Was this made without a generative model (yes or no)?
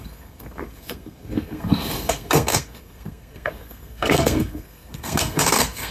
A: no